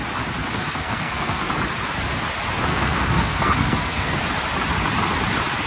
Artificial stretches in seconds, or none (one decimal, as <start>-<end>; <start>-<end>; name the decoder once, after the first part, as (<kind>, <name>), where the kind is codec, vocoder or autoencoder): 0.4-1.5 (codec, SNAC); 2.7-4.2

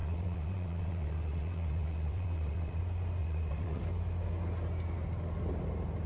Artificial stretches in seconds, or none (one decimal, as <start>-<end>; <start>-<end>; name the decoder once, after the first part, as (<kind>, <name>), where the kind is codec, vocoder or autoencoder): 0.0-2.8 (vocoder, WaveNeXt); 3.2-3.8